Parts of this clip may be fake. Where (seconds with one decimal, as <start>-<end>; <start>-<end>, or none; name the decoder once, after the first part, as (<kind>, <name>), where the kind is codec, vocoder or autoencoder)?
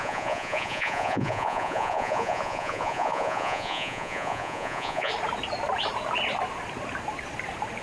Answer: 0.0-5.1 (vocoder, Vocos)